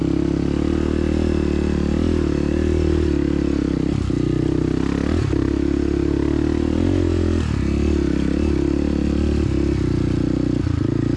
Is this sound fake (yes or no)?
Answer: no